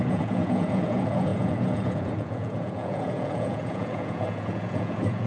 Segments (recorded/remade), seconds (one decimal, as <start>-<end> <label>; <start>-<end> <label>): 0.0-5.3 remade